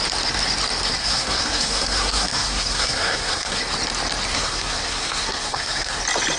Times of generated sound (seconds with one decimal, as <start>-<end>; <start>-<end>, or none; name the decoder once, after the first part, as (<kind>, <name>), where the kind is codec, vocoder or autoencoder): 1.0-3.6 (codec, SNAC); 4.3-6.0